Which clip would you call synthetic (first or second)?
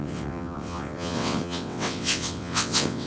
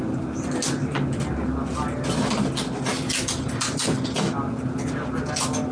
first